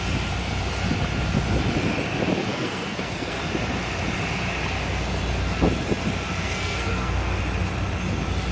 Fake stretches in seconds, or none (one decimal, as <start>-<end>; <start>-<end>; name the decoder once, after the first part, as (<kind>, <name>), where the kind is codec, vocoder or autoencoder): 2.5-3.4 (codec, SNAC); 6.4-7.4